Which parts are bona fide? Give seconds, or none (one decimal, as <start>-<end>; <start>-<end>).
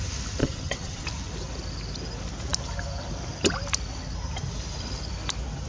0.0-0.4; 1.0-5.7